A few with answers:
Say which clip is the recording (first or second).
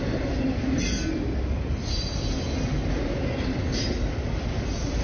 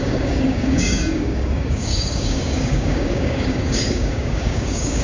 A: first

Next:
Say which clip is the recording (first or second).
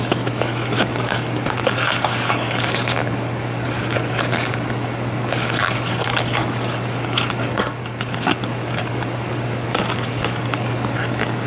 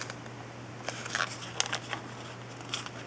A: second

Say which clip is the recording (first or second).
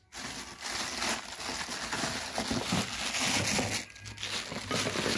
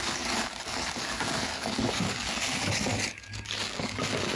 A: first